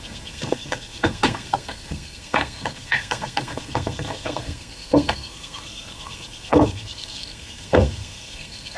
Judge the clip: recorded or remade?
remade